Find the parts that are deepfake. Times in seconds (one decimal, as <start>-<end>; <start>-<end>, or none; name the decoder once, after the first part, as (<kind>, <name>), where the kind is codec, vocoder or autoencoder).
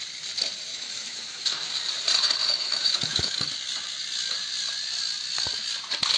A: 0.7-1.7 (autoencoder, DAC-VAE); 2.4-3.4